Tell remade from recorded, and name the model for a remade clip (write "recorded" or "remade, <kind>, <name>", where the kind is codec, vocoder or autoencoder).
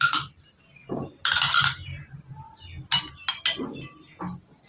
recorded